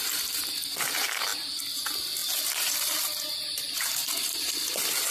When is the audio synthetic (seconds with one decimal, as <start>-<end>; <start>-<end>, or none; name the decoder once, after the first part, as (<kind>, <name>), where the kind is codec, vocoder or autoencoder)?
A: none